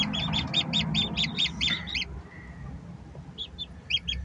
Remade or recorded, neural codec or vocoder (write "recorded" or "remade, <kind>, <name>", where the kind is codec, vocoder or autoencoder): recorded